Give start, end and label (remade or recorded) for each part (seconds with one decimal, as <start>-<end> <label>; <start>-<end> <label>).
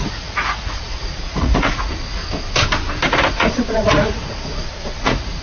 0.0-2.2 remade; 2.2-3.1 recorded; 3.1-5.4 remade